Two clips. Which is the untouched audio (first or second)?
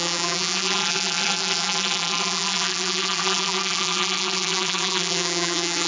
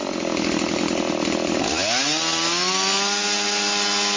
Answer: second